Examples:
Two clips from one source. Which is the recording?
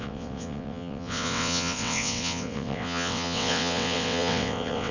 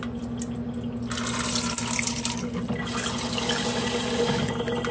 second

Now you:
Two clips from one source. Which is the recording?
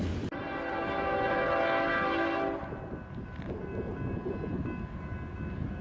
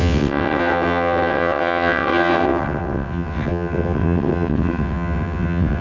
first